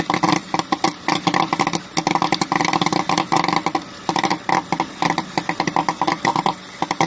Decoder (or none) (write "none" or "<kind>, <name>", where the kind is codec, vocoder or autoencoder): none